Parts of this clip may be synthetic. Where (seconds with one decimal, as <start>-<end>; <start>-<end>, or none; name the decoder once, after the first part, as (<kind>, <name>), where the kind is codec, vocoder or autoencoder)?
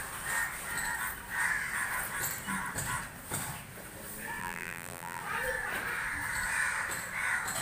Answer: 4.4-5.2 (vocoder, BigVGAN v2)